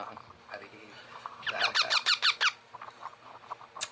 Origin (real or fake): fake